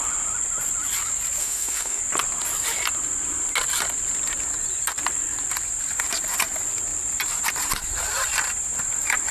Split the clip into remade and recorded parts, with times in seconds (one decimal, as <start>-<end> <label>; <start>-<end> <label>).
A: 0.0-1.4 recorded; 1.4-2.0 remade; 2.0-9.3 recorded